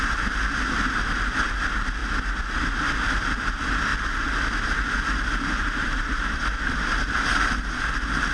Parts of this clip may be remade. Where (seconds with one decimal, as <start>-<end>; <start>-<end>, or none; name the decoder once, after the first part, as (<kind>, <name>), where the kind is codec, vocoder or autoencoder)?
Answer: none